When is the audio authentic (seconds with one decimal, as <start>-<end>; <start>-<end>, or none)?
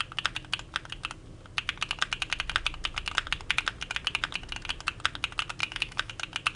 0.0-5.6; 6.1-6.6